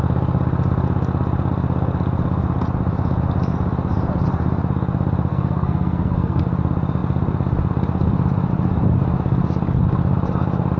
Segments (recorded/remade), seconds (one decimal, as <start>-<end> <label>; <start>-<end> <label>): 0.0-5.3 recorded; 5.3-6.4 remade; 6.4-10.8 recorded